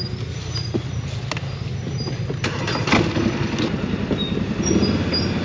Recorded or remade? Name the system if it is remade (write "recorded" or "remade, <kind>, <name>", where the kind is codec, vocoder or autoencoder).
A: recorded